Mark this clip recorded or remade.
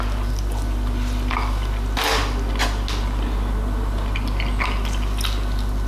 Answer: recorded